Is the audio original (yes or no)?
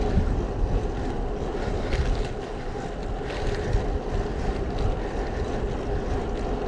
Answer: yes